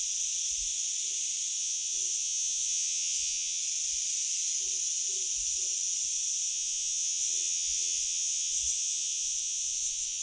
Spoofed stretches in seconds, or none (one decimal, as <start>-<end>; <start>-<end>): 1.6-3.6; 6.5-10.2